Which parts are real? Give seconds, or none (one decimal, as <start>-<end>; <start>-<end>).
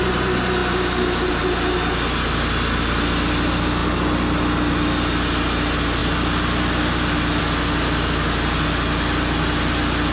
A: 0.0-10.1